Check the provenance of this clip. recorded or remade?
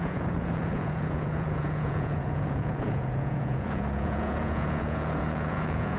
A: remade